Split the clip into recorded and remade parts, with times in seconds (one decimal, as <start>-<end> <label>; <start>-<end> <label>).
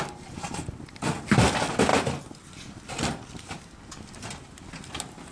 0.0-5.3 recorded